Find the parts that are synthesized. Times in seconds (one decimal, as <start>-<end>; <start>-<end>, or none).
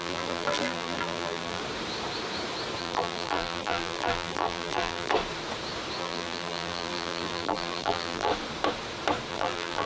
0.0-1.6; 2.8-5.1; 6.0-8.3; 9.3-9.9